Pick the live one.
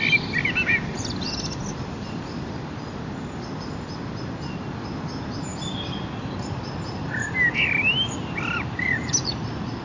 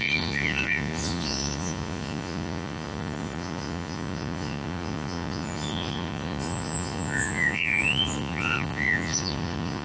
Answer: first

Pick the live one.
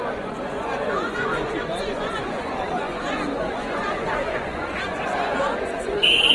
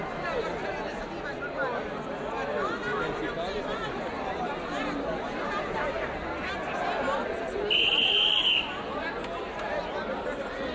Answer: second